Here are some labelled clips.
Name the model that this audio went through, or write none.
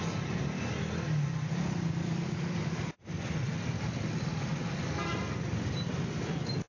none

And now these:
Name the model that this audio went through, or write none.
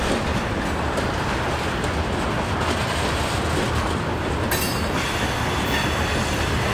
none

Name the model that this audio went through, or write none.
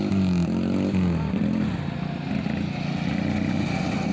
none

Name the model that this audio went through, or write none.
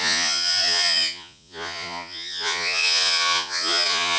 vocoder, Vocos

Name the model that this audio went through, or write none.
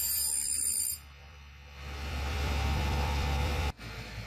vocoder, BigVGAN v2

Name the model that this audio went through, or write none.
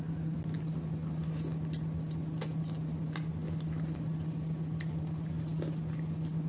none